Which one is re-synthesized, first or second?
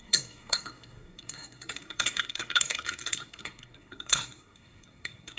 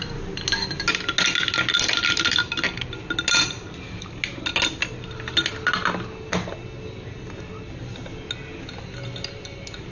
first